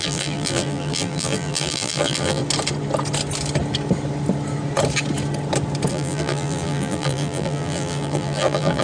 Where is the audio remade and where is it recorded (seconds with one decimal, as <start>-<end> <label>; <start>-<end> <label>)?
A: 0.0-2.4 remade; 2.4-5.9 recorded; 5.9-8.8 remade